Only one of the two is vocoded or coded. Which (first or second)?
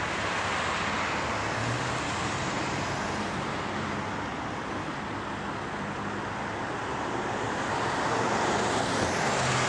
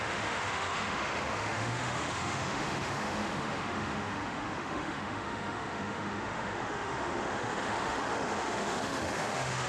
second